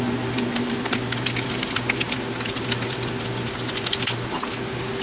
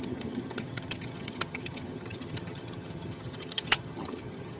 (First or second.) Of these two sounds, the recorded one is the first